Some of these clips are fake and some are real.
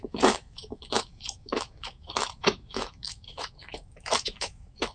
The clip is fake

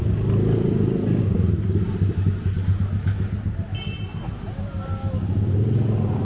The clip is real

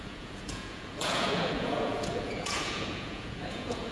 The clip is fake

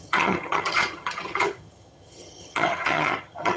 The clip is fake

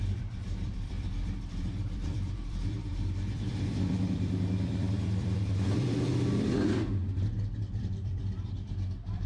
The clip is fake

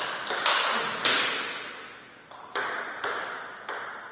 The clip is real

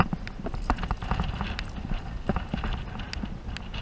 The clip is real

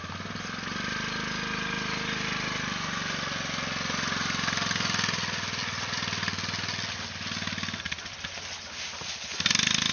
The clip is real